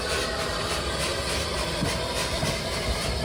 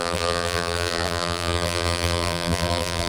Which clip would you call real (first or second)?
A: first